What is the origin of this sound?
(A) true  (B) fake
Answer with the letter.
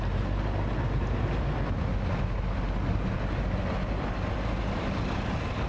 A